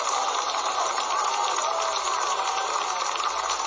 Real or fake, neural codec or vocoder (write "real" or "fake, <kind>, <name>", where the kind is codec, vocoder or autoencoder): real